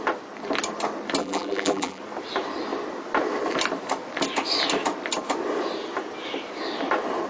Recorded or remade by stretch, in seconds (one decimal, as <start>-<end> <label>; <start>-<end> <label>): 0.0-1.2 recorded; 1.2-2.0 remade; 2.0-7.3 recorded